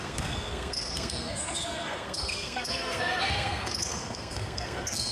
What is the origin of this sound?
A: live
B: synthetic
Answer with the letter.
B